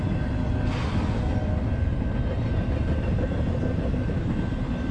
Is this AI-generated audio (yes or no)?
no